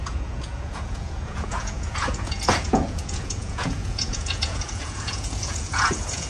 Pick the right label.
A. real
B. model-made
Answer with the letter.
B